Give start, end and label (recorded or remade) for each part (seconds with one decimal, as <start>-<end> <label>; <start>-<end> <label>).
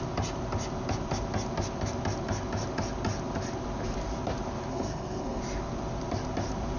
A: 0.0-4.7 recorded; 4.7-5.4 remade; 5.4-6.8 recorded